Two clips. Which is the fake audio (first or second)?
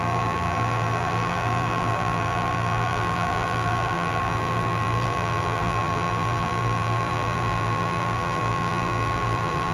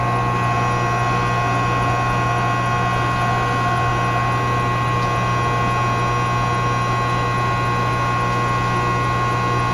first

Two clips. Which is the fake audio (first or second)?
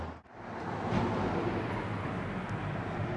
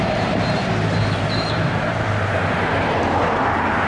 second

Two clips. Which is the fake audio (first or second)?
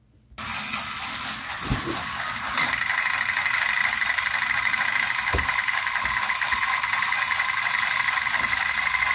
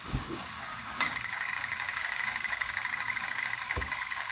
second